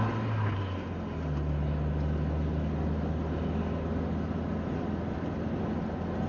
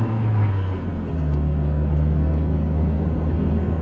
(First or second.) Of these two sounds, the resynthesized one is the second